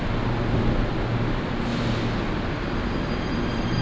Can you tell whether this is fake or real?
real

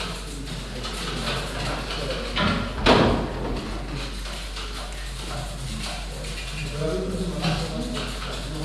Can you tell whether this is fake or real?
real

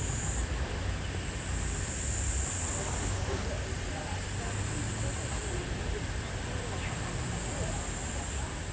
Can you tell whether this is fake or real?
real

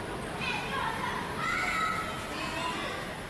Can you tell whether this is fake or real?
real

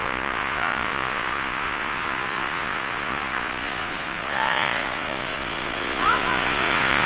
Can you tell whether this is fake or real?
fake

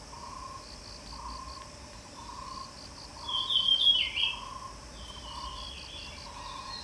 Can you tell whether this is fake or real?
real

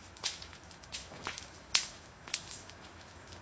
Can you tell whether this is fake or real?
fake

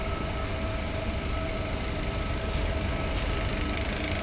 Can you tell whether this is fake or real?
real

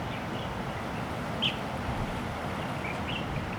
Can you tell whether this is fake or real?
real